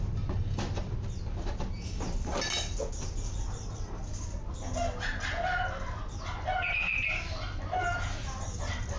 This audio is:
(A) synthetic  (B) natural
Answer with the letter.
B